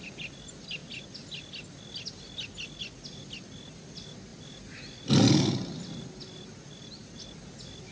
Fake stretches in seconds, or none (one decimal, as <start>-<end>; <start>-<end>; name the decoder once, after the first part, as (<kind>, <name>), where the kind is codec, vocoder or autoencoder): none